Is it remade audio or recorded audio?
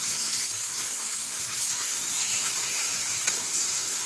remade